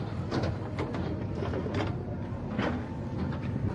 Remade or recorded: recorded